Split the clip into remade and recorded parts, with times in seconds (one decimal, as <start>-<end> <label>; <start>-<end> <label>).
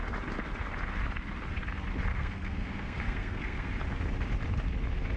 0.0-2.1 recorded; 2.1-3.7 remade; 3.7-5.2 recorded